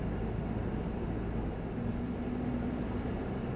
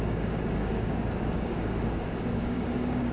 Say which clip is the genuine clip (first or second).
first